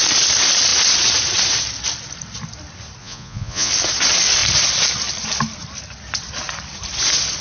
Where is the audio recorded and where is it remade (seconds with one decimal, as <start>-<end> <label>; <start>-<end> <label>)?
0.0-3.0 recorded; 3.0-3.7 remade; 3.7-7.4 recorded